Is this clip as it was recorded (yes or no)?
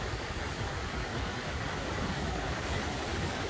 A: no